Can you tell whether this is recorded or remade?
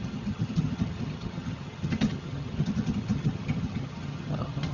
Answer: remade